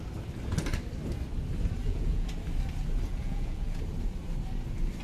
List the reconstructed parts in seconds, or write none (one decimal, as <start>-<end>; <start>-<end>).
1.8-2.3; 3.1-3.8